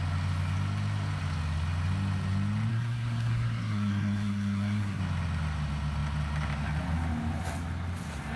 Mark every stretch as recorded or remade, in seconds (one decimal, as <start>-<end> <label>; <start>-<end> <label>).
0.0-2.7 recorded; 2.7-5.0 remade; 5.0-8.4 recorded